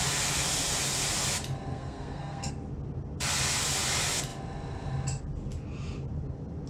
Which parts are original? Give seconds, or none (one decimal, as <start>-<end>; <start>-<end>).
0.0-1.7; 2.5-6.7